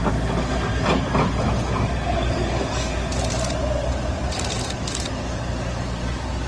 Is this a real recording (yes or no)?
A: yes